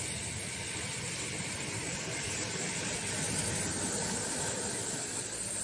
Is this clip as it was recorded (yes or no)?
no